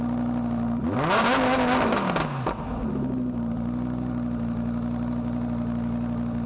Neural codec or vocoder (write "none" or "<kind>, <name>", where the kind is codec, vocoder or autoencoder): none